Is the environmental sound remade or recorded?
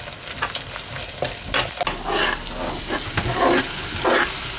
recorded